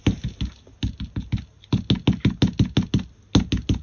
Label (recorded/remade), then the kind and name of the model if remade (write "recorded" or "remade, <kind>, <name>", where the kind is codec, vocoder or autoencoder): recorded